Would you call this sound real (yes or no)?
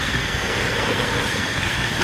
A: no